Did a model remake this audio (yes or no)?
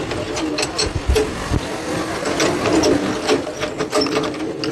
no